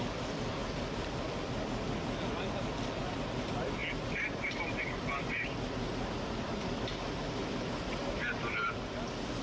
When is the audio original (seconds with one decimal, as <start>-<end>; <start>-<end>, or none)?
0.0-9.4